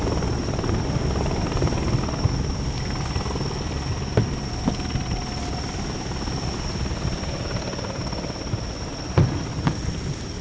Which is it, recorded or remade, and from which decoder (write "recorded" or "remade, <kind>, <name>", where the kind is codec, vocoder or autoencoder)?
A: recorded